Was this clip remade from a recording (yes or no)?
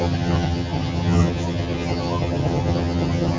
yes